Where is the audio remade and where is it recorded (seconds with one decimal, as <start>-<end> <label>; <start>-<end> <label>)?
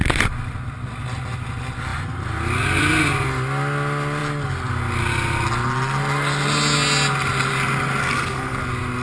0.0-8.0 recorded; 8.0-8.6 remade; 8.6-9.0 recorded